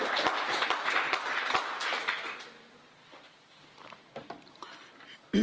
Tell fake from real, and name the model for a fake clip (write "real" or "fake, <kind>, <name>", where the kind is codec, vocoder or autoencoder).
real